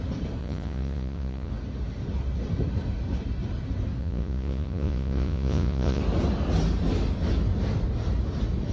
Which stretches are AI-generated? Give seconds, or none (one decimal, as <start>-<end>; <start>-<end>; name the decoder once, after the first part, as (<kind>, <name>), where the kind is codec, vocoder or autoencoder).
0.4-1.5 (vocoder, Vocos); 4.0-6.0